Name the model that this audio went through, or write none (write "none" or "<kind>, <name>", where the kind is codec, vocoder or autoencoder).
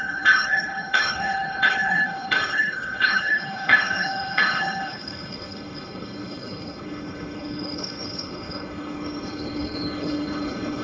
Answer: codec, HILCodec